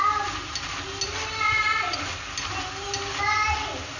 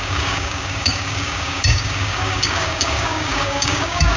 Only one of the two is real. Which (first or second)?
first